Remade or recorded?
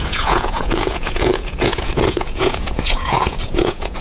remade